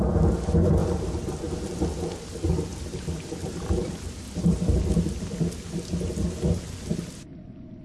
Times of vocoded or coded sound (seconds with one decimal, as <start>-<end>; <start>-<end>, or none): 0.8-1.5; 2.7-5.2